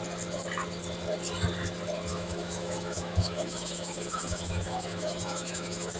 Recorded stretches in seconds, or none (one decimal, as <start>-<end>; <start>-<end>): 0.0-2.1